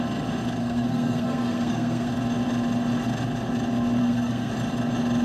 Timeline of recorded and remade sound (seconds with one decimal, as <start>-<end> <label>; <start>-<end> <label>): 0.0-0.6 recorded; 0.6-2.1 remade; 2.1-4.0 recorded; 4.0-4.5 remade; 4.5-5.2 recorded